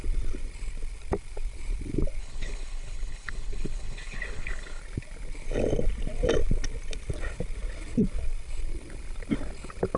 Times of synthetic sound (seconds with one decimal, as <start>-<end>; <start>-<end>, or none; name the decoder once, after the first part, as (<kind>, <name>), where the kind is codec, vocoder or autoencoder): 2.2-4.8 (codec, HILCodec)